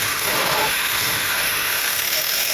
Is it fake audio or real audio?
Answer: fake